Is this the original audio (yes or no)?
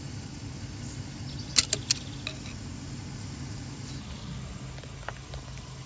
yes